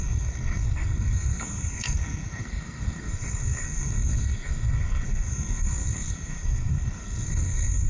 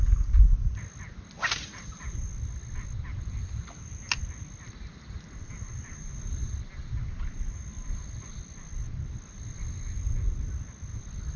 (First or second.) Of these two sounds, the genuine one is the second